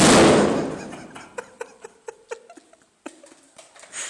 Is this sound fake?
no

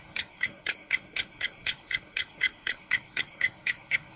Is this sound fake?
yes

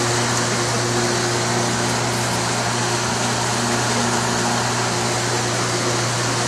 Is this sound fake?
no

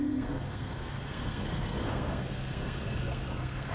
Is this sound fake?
yes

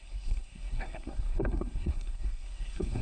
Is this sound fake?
yes